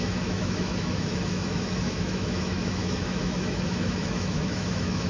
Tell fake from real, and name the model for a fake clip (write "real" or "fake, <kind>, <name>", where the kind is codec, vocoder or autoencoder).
fake, autoencoder, DAC-VAE